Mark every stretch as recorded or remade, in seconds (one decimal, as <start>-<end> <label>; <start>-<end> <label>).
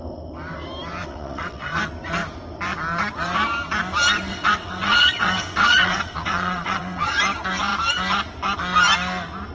0.0-1.0 recorded; 1.0-1.8 remade; 1.8-4.3 recorded; 4.3-7.1 remade; 7.1-9.5 recorded